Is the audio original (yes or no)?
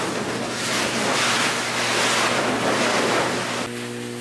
yes